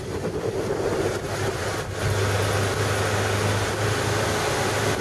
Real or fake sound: real